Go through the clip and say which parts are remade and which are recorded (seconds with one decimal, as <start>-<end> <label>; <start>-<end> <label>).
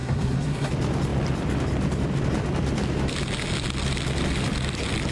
0.0-0.7 remade; 0.7-5.1 recorded